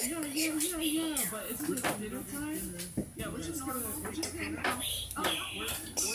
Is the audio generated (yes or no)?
no